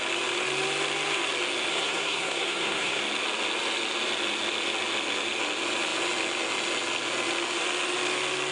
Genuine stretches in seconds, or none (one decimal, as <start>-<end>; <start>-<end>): 0.0-1.7; 3.0-8.5